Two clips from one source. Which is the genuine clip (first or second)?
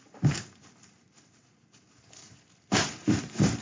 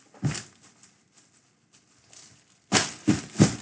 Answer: second